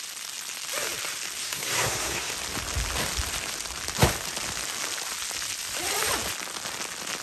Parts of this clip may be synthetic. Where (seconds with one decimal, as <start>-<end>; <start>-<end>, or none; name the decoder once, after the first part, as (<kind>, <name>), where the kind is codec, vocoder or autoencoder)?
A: 1.4-2.3 (codec, SNAC)